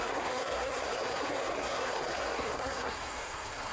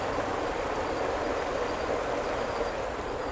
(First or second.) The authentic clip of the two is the second